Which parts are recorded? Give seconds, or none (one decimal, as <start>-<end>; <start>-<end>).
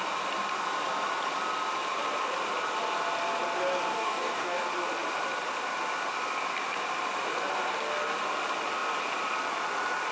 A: 0.0-3.9; 4.6-10.1